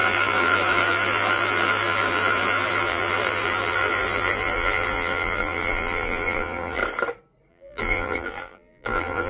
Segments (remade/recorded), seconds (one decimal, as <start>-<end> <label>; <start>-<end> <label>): 0.0-6.8 remade; 6.8-7.5 recorded; 7.5-9.3 remade